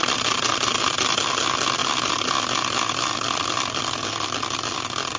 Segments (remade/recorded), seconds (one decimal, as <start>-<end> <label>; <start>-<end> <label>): 0.0-5.2 recorded